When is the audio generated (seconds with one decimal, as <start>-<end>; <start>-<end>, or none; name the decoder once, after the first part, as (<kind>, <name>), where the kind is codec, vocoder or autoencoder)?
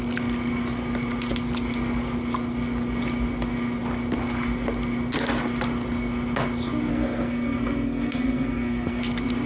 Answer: 6.9-9.0 (codec, SNAC)